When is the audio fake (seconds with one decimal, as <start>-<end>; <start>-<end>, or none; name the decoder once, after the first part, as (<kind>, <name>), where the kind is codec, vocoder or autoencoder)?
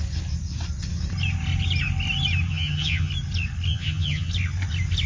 2.5-3.1 (vocoder, HiFi-GAN); 3.7-4.3